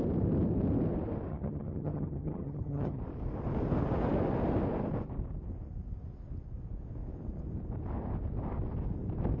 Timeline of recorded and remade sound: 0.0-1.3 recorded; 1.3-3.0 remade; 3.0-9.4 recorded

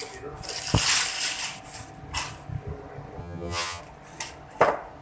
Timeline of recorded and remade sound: 0.0-3.2 recorded; 3.2-3.8 remade; 3.8-5.0 recorded

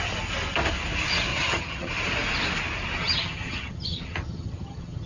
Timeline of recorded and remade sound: 0.0-1.3 recorded; 1.3-1.9 remade; 1.9-3.0 recorded; 3.0-5.1 remade

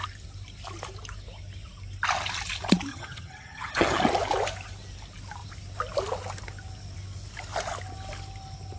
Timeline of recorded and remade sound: 0.0-2.9 recorded; 2.9-4.0 remade; 4.0-8.8 recorded

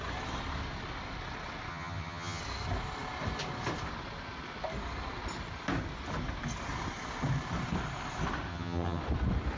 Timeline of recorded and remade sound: 0.0-1.7 recorded; 1.7-2.4 remade; 2.4-8.5 recorded; 8.5-9.0 remade; 9.0-9.6 recorded

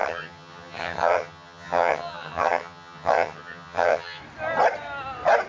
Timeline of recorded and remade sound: 0.0-4.2 remade; 4.2-5.5 recorded

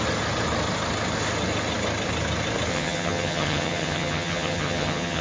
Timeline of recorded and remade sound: 0.0-2.7 recorded; 2.7-5.2 remade

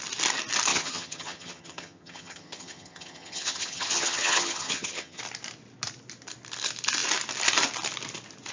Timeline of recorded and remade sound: 0.0-0.7 recorded; 0.7-5.2 remade; 5.2-8.5 recorded